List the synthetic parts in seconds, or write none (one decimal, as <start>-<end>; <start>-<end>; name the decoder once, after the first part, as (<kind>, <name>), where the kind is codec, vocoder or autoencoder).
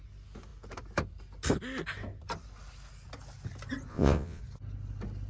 3.9-4.4 (vocoder, WaveNeXt)